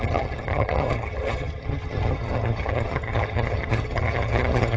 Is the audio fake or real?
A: fake